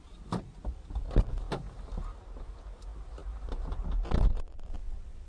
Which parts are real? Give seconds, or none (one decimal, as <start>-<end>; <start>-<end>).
0.0-5.3